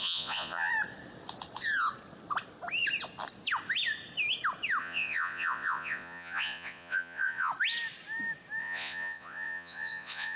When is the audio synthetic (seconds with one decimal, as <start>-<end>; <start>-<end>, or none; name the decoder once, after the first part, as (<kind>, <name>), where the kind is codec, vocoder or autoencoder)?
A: 0.0-0.7 (vocoder, Vocos); 4.8-7.5; 8.6-10.4